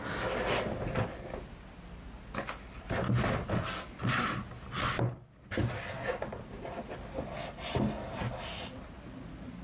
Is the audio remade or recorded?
recorded